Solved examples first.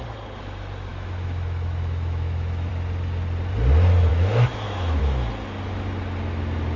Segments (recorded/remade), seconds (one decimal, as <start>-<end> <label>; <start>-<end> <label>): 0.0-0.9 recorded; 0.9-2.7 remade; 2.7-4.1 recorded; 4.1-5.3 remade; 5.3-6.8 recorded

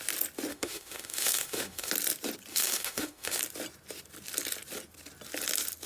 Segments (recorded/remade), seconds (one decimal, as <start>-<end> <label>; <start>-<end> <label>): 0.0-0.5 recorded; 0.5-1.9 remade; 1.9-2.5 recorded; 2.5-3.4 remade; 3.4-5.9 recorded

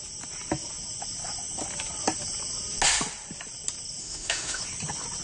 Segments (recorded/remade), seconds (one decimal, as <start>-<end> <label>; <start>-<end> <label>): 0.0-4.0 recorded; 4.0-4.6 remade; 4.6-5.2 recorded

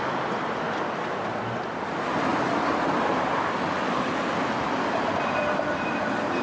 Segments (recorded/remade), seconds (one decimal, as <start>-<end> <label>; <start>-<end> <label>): 0.0-6.4 recorded